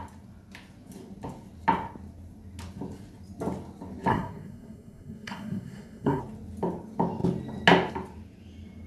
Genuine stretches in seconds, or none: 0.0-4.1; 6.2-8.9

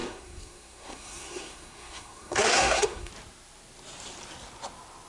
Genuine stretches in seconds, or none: 3.1-5.1

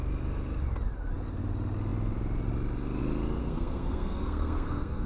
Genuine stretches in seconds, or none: 0.0-3.4

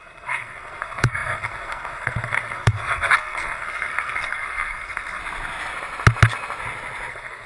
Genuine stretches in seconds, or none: 5.2-7.1

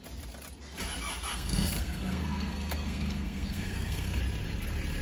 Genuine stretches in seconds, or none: 0.0-1.3; 4.2-5.0

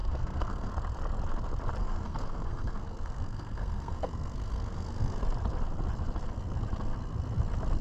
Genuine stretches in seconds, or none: 0.7-1.8; 5.2-7.8